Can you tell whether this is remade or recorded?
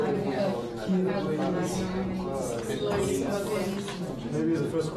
recorded